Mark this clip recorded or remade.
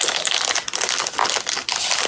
recorded